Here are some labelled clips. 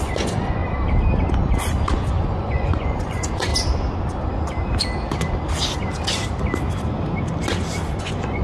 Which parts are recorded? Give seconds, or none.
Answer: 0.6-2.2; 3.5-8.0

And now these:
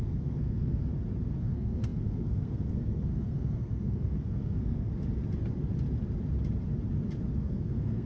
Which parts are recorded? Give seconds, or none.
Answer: 0.9-1.4; 4.9-7.4

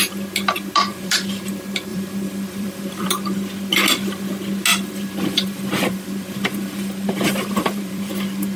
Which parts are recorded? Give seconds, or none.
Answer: 0.0-0.9; 1.5-1.9; 3.1-4.7; 8.1-8.6